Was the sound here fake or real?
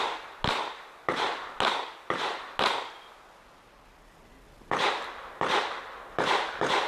real